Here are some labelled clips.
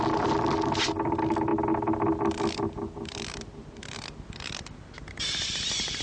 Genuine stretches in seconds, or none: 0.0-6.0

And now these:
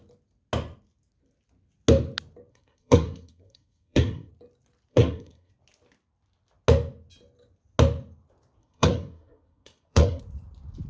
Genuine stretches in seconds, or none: 0.0-2.5; 4.3-4.9; 5.5-8.6; 10.2-10.9

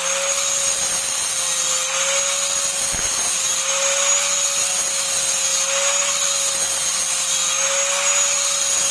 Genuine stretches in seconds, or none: 0.0-8.9

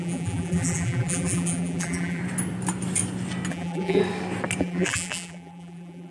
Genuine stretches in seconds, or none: 2.2-3.5; 4.0-4.6

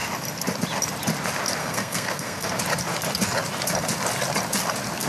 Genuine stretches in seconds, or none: 0.0-1.6; 2.6-5.1

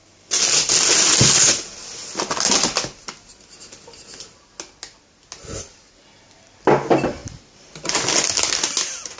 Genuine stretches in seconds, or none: 0.0-9.2

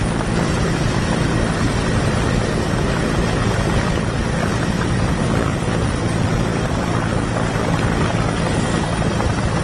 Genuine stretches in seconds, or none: 0.0-4.5; 5.1-6.5; 7.1-9.6